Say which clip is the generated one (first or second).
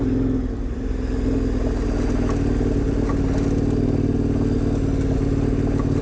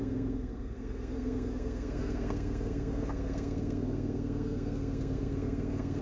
second